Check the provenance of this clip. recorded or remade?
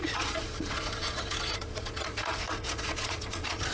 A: remade